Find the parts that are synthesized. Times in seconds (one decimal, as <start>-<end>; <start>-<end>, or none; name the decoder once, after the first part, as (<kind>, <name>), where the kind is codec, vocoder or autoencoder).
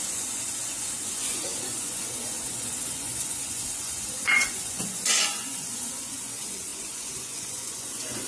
0.0-8.3 (vocoder, Vocos)